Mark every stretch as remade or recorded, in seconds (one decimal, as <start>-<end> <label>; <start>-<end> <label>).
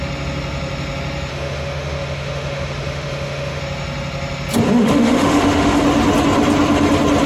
0.0-1.3 recorded; 1.3-3.6 remade; 3.6-4.8 recorded; 4.8-5.8 remade; 5.8-7.3 recorded